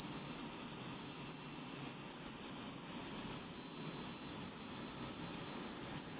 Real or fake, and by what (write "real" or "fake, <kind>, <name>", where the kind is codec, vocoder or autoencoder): real